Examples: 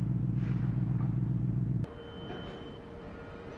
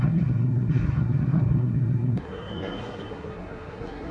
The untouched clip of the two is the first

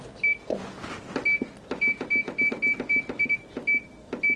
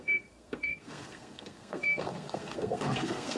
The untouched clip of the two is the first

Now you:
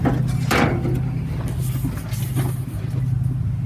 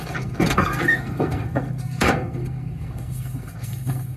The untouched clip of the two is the first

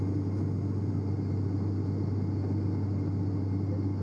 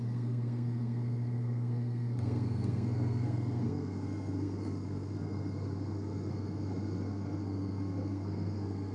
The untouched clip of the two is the first